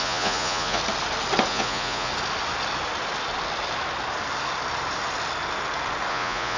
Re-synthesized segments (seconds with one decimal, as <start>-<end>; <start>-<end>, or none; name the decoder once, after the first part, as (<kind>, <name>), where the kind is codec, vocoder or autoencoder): 0.0-0.8 (vocoder, Vocos); 1.5-2.1; 6.1-6.6